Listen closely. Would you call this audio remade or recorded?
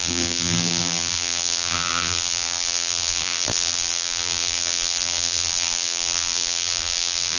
remade